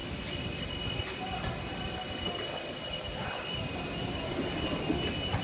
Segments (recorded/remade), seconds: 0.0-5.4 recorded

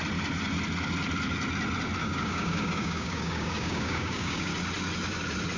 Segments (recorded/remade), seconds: 0.0-2.0 recorded; 2.0-4.5 remade; 4.5-5.6 recorded

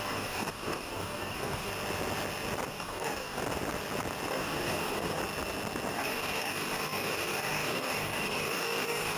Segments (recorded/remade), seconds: 0.0-1.7 remade; 1.7-2.7 recorded; 2.7-3.4 remade; 3.4-4.3 recorded; 4.3-5.2 remade; 5.2-5.9 recorded; 5.9-9.2 remade

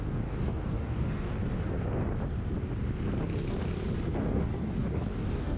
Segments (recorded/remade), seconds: 0.0-1.4 remade; 1.4-4.2 recorded; 4.2-5.6 remade

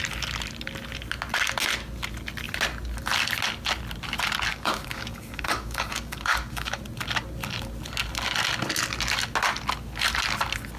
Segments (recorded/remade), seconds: 0.0-4.5 recorded; 4.5-6.8 remade; 6.8-10.8 recorded

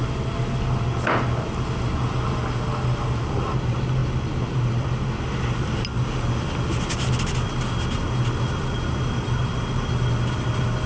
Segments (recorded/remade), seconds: 0.0-10.9 recorded

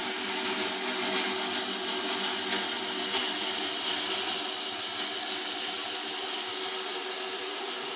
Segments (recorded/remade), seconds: 0.0-8.0 recorded

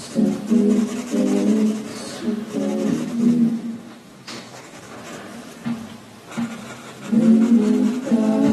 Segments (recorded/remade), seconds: 0.0-3.5 recorded; 3.5-5.0 remade; 5.0-8.5 recorded